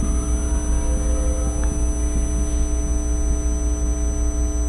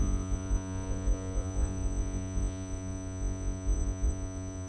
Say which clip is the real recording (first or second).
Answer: first